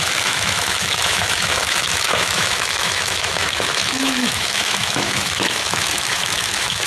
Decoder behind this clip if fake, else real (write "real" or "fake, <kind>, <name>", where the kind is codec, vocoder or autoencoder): fake, autoencoder, DAC-VAE